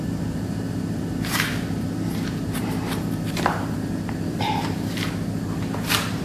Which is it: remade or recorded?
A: remade